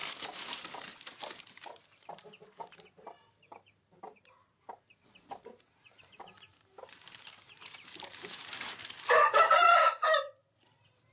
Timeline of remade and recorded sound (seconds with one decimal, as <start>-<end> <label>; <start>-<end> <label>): 0.0-11.1 remade